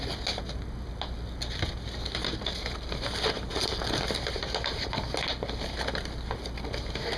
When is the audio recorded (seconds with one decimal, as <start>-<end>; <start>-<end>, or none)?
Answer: 0.0-7.2